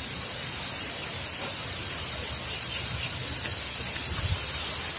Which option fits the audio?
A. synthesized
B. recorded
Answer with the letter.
B